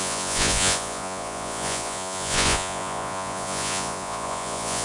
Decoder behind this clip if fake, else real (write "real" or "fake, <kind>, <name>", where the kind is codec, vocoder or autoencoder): fake, vocoder, Vocos